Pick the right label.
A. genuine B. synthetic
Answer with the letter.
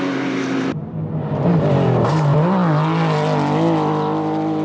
A